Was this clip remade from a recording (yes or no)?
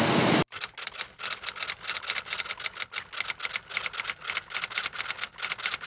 no